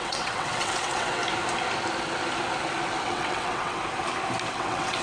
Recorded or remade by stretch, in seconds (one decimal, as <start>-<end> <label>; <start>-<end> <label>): 0.0-1.2 remade; 1.2-3.0 recorded; 3.0-3.8 remade; 3.8-4.5 recorded; 4.5-5.0 remade